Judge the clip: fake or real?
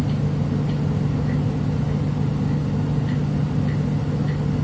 real